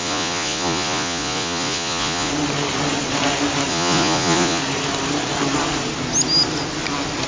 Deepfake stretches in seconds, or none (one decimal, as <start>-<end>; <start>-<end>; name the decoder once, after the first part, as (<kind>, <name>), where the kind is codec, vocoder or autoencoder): 0.0-2.3 (vocoder, Vocos); 3.7-4.6